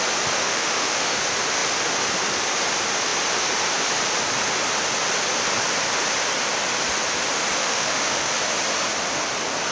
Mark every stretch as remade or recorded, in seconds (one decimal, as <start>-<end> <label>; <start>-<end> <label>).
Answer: 0.0-0.4 recorded; 0.4-1.2 remade; 1.2-7.6 recorded; 7.6-8.3 remade; 8.3-9.7 recorded